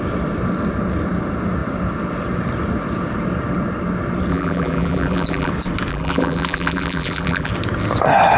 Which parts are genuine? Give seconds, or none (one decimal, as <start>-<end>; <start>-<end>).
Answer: 0.0-4.3; 5.5-5.9; 7.5-8.4